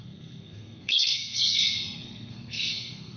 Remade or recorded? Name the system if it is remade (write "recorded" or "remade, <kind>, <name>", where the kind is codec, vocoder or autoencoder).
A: remade, codec, SNAC